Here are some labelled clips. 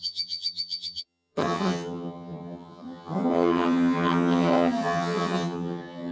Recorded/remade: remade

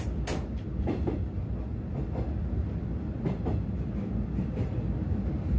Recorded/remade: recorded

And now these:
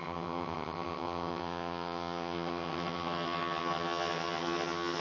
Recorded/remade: remade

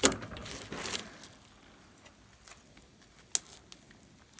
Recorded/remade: recorded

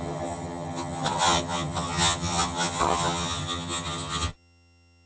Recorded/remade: remade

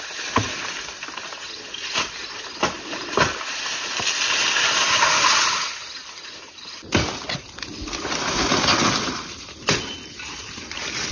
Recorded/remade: recorded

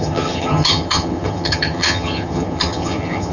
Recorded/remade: remade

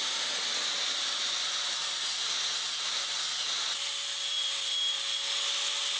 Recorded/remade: recorded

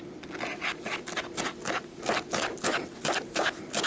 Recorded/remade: recorded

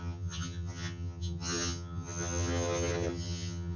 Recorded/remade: remade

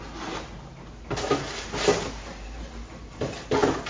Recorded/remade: recorded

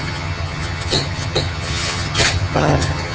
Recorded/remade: remade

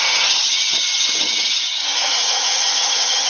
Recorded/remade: remade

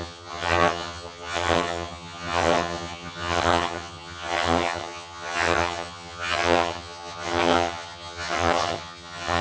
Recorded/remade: remade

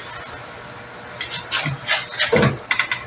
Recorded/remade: recorded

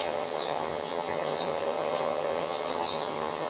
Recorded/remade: remade